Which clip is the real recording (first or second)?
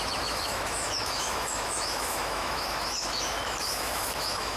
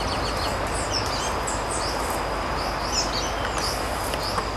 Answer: second